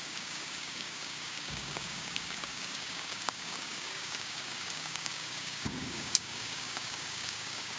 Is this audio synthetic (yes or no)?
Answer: yes